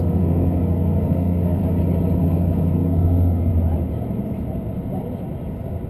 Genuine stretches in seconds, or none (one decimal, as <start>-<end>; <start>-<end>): 1.6-2.2; 3.5-5.9